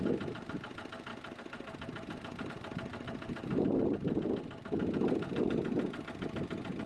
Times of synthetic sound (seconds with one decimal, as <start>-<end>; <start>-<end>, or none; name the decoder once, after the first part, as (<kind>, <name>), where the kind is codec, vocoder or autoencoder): none